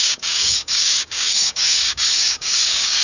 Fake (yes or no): yes